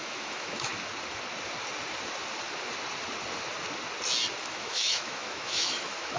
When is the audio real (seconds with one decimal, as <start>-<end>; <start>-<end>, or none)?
0.7-4.4